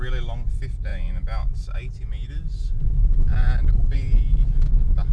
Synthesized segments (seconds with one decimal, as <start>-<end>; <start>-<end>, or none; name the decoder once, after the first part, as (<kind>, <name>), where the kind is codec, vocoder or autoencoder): none

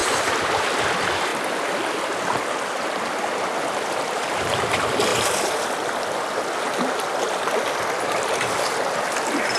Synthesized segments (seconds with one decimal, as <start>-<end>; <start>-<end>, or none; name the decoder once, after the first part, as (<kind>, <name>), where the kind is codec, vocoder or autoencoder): 0.0-0.6 (vocoder, BigVGAN v2); 5.1-6.4

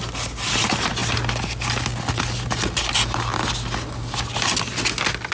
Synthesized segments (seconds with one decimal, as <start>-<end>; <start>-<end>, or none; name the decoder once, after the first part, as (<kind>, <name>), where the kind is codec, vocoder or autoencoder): none

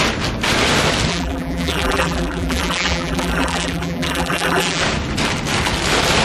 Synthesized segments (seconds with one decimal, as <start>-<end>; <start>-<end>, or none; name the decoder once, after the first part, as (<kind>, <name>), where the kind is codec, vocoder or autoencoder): 1.1-4.8 (vocoder, BigVGAN v2)

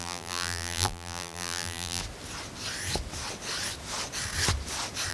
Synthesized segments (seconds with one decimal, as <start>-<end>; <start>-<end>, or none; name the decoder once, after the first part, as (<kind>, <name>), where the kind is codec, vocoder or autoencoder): 0.0-2.0 (vocoder, BigVGAN v2)

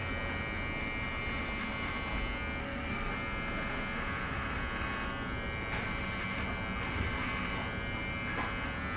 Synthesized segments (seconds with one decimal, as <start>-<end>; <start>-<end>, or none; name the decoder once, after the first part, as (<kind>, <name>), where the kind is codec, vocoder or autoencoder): 2.6-3.1 (codec, SNAC)

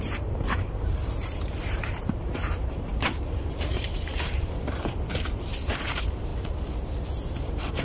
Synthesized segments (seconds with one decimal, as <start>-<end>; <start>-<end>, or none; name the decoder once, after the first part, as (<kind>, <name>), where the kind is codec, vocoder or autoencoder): 0.0-6.3 (vocoder, BigVGAN v2); 7.3-7.8

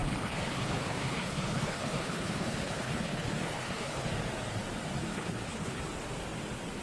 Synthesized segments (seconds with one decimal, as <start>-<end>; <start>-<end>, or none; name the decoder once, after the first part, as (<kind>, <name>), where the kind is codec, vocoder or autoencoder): 0.0-4.1 (codec, HILCodec); 5.1-5.8